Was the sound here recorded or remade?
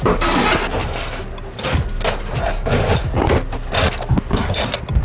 recorded